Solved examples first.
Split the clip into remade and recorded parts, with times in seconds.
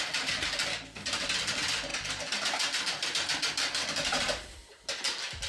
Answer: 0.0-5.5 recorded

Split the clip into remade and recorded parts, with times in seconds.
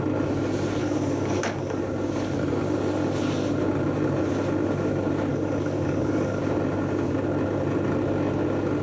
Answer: 0.0-0.8 recorded; 0.8-1.8 remade; 1.8-5.3 recorded; 5.3-6.4 remade; 6.4-8.8 recorded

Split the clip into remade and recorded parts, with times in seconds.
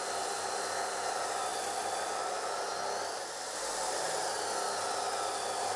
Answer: 0.0-5.8 recorded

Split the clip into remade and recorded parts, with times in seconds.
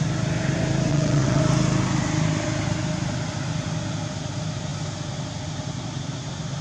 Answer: 0.0-0.9 recorded; 0.9-1.4 remade; 1.4-6.6 recorded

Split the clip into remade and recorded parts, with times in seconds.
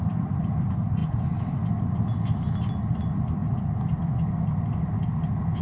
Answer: 0.0-5.6 recorded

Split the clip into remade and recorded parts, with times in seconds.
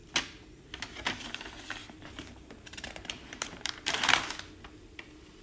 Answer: 0.0-1.8 recorded; 1.8-4.2 remade; 4.2-5.4 recorded